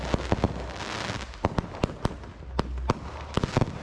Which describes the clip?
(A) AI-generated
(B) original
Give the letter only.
B